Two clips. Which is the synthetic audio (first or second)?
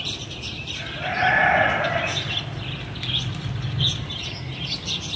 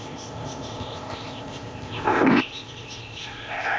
second